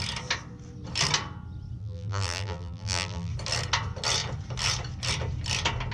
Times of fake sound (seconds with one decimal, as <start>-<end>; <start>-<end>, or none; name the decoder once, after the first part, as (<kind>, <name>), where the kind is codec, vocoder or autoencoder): 1.8-3.3 (vocoder, BigVGAN v2)